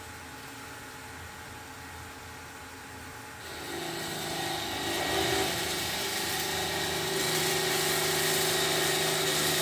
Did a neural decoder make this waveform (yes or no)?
no